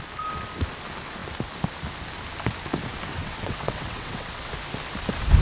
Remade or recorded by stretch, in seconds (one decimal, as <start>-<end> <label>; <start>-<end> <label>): 0.0-3.1 recorded; 3.1-4.5 remade; 4.5-5.4 recorded